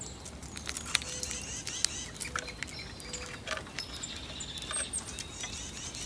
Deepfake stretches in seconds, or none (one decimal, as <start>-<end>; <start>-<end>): none